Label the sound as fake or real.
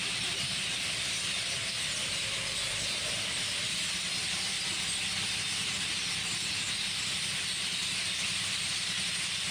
real